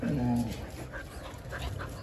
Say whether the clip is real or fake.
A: real